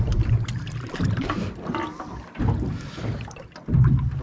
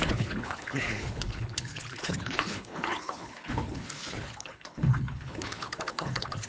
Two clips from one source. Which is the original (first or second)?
first